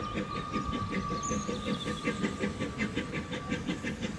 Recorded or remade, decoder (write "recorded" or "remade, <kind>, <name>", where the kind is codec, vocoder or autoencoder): recorded